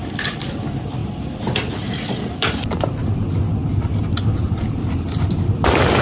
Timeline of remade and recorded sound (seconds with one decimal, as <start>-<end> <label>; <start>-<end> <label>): 0.0-6.0 remade